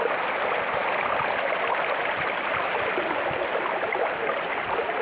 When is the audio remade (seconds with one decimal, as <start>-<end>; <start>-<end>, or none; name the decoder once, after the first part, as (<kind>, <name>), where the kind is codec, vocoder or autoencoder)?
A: none